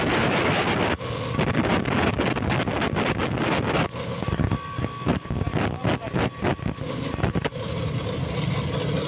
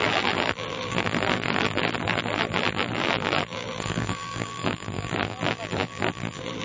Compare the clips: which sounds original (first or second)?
first